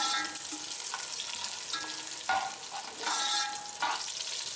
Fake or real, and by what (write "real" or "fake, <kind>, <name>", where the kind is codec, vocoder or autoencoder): real